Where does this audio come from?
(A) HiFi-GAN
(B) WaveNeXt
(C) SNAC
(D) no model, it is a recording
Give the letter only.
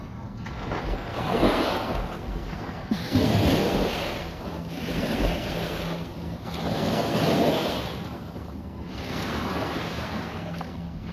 C